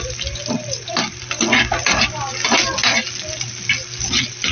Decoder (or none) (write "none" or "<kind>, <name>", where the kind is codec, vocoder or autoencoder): none